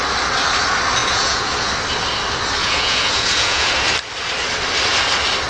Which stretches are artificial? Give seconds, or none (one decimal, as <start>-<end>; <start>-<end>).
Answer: 1.0-1.7; 2.6-3.7